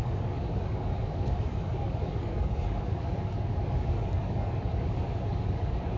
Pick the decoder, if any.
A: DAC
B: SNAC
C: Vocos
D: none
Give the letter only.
A